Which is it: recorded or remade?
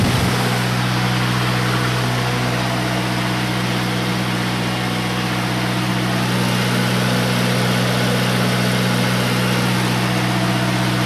recorded